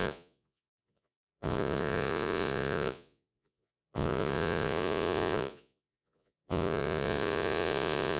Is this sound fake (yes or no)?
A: yes